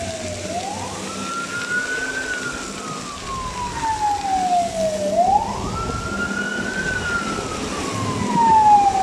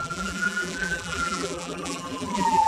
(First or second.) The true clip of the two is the first